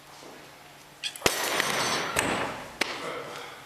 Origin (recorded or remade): recorded